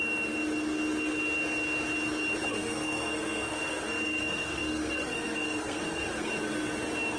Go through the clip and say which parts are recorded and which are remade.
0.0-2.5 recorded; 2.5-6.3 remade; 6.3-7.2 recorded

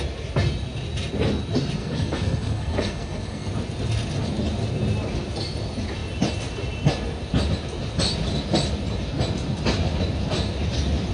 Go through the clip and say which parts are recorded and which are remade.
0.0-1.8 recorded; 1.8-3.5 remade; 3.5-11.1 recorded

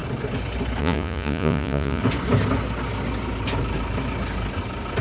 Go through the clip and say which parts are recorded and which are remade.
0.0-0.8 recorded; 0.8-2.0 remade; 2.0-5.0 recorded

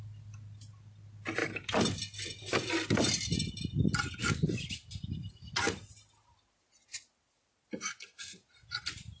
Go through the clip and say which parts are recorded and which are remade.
0.0-9.2 recorded

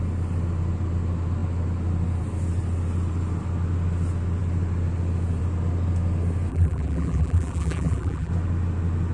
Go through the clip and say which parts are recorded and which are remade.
0.0-6.5 recorded; 6.5-8.3 remade; 8.3-9.1 recorded

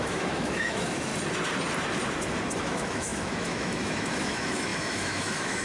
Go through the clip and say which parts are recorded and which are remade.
0.0-1.1 remade; 1.1-2.6 recorded; 2.6-5.6 remade